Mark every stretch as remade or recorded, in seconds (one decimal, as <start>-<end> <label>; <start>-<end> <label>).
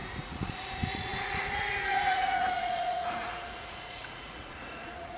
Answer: 0.0-5.2 remade